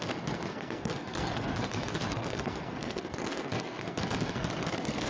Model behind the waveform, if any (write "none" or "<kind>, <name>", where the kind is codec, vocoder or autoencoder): codec, SNAC